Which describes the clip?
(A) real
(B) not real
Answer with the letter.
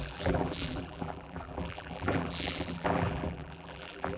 B